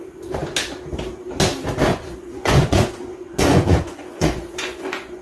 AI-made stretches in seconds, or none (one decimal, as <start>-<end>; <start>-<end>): 1.9-5.2